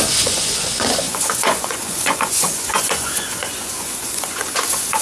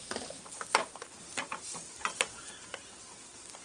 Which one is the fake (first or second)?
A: first